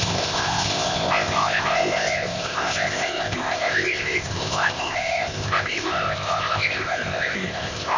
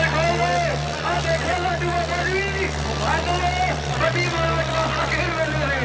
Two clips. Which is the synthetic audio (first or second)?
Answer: first